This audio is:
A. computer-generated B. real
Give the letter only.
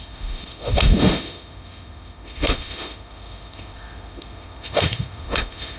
A